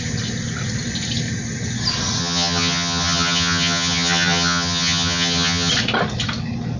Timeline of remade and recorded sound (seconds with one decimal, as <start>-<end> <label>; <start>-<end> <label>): 0.0-2.2 recorded; 2.2-5.7 remade; 5.7-6.8 recorded